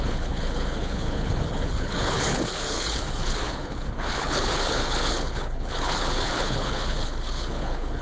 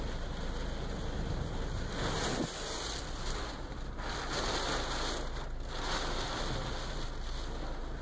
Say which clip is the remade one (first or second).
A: first